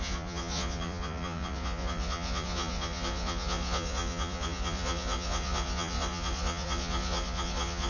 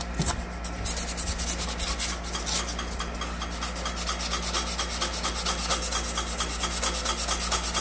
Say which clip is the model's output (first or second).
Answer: first